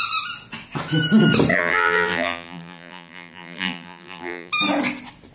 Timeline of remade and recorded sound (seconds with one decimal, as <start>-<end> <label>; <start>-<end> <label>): 0.0-1.5 recorded; 1.5-4.5 remade; 4.5-5.3 recorded